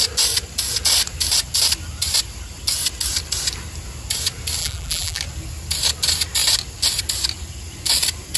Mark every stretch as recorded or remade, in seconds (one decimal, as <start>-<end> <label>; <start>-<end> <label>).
0.0-4.6 recorded; 4.6-5.2 remade; 5.2-8.4 recorded